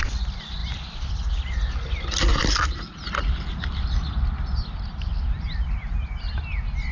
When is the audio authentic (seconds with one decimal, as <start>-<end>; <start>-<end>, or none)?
0.0-6.9